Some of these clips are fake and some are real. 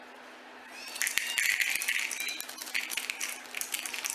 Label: real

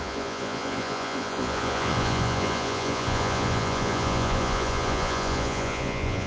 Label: fake